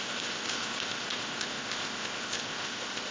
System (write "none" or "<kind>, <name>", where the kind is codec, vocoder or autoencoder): codec, ZipCodec